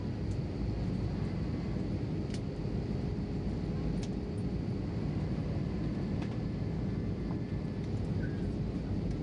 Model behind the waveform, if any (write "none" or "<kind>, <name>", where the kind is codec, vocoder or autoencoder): none